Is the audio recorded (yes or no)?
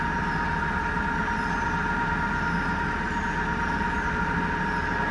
yes